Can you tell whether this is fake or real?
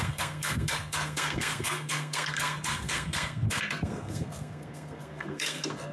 fake